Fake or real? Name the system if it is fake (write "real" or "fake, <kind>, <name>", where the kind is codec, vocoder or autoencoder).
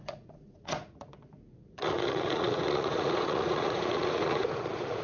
fake, vocoder, Vocos